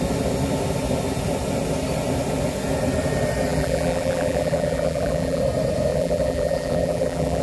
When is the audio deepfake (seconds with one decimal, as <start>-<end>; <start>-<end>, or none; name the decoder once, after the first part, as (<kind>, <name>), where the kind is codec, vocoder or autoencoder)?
3.5-5.4 (vocoder, BigVGAN v2); 5.9-7.4